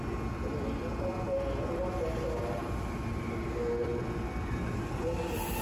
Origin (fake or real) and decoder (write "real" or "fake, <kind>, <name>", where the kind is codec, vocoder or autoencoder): real